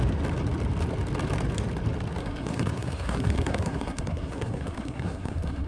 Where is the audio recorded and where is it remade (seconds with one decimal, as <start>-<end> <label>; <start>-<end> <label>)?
0.0-2.2 recorded; 2.2-5.7 remade